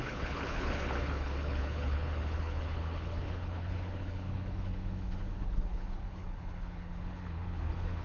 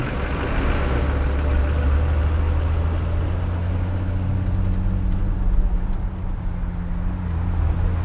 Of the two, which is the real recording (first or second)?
second